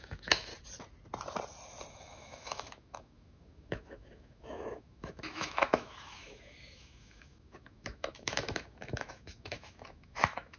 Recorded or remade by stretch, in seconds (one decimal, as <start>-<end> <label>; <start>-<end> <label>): 0.0-0.5 remade; 0.5-1.9 recorded; 1.9-10.6 remade